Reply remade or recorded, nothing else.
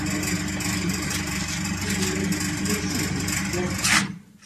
recorded